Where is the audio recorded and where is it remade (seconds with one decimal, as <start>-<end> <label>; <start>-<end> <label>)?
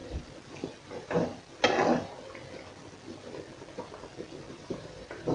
0.0-0.8 recorded; 0.8-1.3 remade; 1.3-4.5 recorded; 4.5-5.3 remade